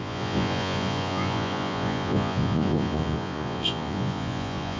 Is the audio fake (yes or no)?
yes